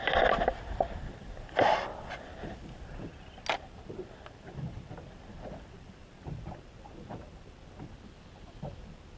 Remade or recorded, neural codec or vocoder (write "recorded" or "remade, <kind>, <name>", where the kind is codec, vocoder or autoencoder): recorded